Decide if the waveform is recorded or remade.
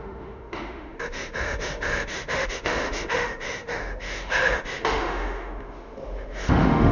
remade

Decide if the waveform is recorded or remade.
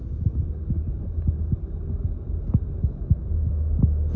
recorded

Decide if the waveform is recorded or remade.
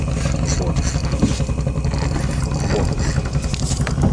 recorded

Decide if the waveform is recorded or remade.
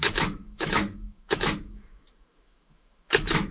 remade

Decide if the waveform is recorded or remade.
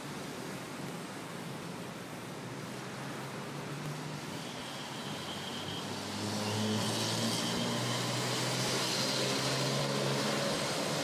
recorded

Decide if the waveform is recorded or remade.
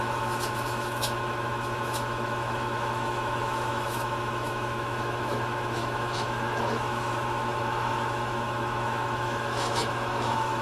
remade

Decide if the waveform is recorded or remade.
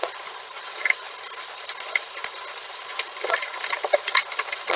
recorded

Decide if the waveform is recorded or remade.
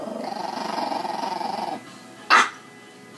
recorded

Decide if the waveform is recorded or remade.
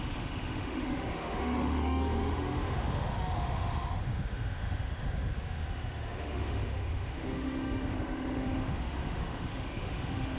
remade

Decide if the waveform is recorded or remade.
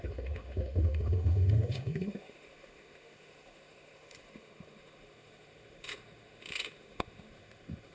remade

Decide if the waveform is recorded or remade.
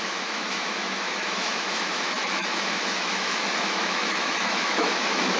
remade